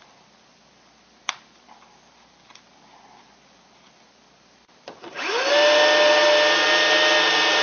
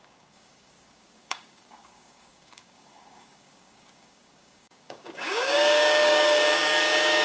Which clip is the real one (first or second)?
first